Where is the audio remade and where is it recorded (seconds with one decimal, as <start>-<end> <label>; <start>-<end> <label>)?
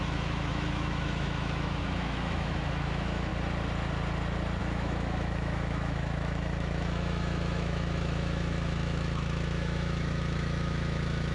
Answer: 0.0-3.3 remade; 3.3-4.6 recorded; 4.6-11.3 remade